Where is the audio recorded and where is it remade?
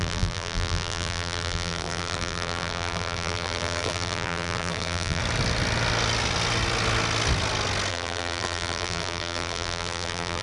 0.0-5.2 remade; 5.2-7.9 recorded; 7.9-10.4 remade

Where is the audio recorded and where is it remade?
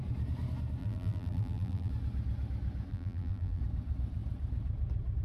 0.0-0.8 recorded; 0.8-1.9 remade; 1.9-2.9 recorded; 2.9-3.6 remade; 3.6-5.2 recorded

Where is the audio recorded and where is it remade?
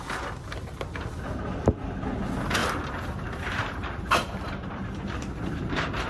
0.0-2.6 recorded; 2.6-6.1 remade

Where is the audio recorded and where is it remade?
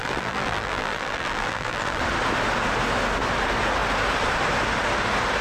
0.0-2.0 remade; 2.0-5.4 recorded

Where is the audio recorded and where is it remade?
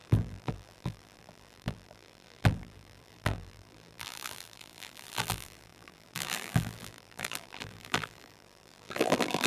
0.0-9.5 remade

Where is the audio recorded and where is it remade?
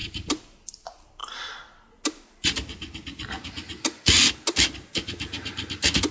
0.0-0.7 remade; 0.7-6.1 recorded